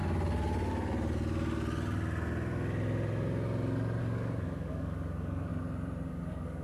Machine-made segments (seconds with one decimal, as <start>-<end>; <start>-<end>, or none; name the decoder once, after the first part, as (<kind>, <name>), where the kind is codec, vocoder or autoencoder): 4.0-5.5 (codec, DAC); 6.1-6.6